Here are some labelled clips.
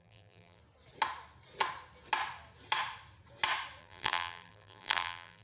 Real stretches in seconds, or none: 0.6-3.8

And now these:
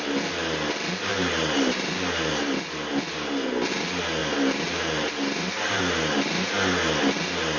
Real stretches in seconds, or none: 0.0-1.1; 1.9-4.2; 5.8-7.6

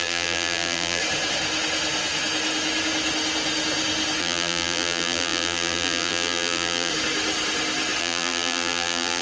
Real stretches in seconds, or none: 1.0-4.2; 6.9-8.0

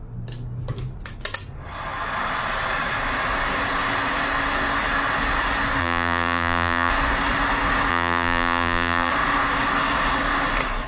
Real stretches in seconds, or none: 0.0-5.8; 6.9-7.9; 9.1-10.9